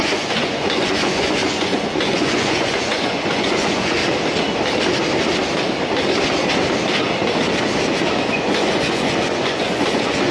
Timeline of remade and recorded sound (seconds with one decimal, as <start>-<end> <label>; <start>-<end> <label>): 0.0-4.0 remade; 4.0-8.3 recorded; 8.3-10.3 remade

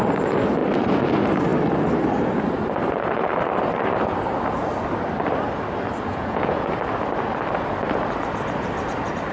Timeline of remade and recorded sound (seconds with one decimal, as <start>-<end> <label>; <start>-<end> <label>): 0.0-6.1 recorded; 6.1-6.7 remade; 6.7-9.3 recorded

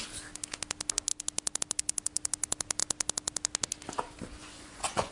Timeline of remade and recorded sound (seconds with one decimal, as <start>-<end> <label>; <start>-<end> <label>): 0.0-4.4 recorded; 4.4-5.1 remade

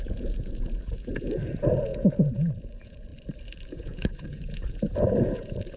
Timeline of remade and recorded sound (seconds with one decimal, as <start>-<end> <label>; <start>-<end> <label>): 0.0-3.1 remade; 3.1-3.7 recorded; 3.7-5.8 remade

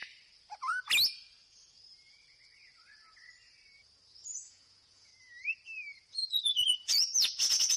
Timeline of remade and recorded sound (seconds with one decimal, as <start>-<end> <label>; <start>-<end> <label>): 0.0-4.5 recorded; 4.5-5.1 remade; 5.1-6.1 recorded; 6.1-7.8 remade

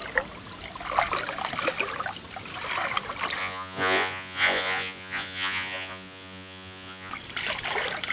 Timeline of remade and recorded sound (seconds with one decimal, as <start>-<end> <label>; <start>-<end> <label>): 0.0-3.4 recorded; 3.4-7.1 remade; 7.1-8.1 recorded

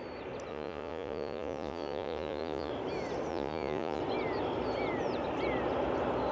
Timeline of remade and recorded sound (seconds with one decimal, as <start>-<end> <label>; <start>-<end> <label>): 0.0-0.5 recorded; 0.5-2.7 remade; 2.7-3.3 recorded; 3.3-4.0 remade; 4.0-6.3 recorded

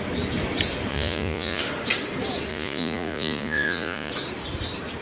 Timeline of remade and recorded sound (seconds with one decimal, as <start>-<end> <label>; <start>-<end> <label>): 0.0-0.9 recorded; 0.9-1.6 remade; 1.6-2.5 recorded; 2.5-4.1 remade; 4.1-5.0 recorded